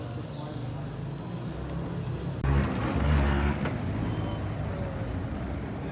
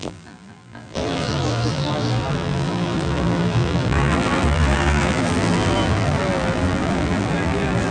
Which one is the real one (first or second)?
first